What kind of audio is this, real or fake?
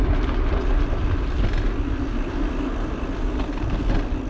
real